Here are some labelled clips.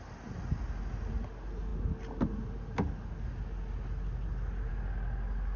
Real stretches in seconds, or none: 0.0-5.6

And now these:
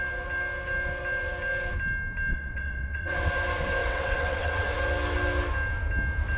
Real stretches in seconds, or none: 0.0-2.3; 3.3-3.8; 4.7-6.4

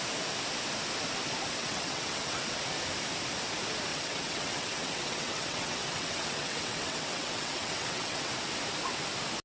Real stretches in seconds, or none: 0.0-1.6; 2.5-3.9; 8.3-9.4